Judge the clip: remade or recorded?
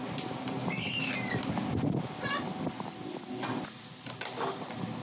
recorded